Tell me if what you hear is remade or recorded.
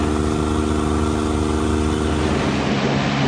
recorded